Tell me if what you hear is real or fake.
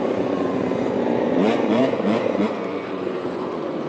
fake